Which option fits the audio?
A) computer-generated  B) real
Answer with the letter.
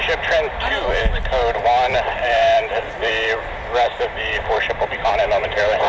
A